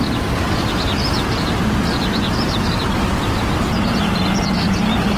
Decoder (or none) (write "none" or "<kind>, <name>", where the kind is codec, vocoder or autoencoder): none